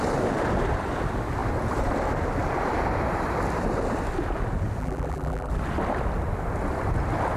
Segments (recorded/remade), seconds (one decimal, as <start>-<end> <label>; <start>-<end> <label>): 0.0-4.8 recorded; 4.8-5.5 remade; 5.5-7.4 recorded